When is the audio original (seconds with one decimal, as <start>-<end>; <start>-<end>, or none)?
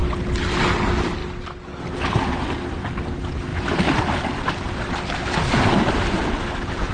0.0-6.9